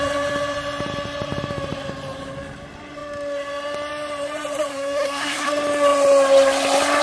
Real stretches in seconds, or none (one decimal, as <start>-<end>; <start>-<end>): 0.0-4.7; 5.5-7.0